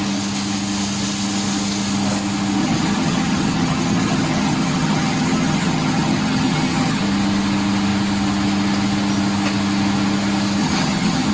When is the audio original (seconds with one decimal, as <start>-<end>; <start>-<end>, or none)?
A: 0.0-2.6; 7.0-10.6

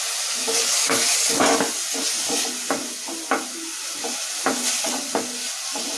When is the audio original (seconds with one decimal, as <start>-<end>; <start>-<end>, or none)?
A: 0.0-0.4; 1.3-6.0